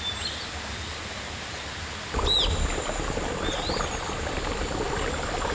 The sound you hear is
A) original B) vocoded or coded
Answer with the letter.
A